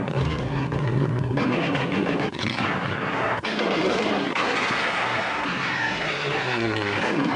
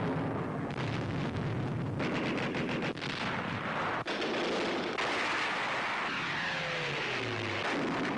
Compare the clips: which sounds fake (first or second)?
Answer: first